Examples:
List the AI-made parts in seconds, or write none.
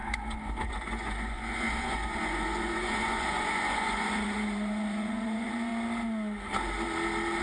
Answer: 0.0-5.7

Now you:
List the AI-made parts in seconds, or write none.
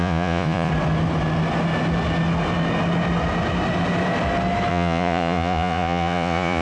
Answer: 0.0-0.7; 4.7-6.6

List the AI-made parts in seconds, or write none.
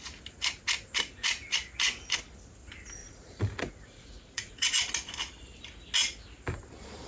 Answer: 3.0-4.9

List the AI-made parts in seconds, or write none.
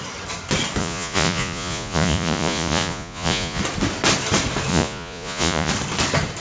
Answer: 0.8-3.6; 4.7-5.7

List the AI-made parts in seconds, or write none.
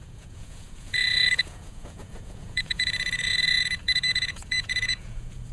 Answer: 0.0-5.5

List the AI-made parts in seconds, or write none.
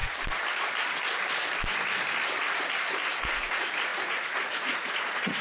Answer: 3.2-5.4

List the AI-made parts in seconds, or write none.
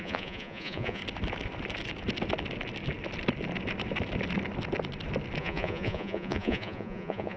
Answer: 0.0-1.0; 5.4-7.4